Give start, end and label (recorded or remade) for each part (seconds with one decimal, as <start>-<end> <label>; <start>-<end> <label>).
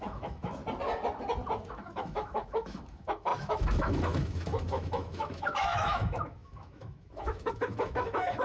0.0-0.6 remade; 0.6-1.7 recorded; 1.7-8.4 remade